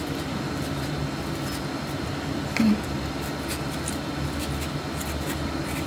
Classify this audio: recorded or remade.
recorded